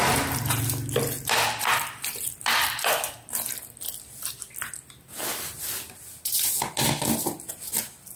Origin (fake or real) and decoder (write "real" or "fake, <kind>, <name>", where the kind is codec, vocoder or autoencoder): real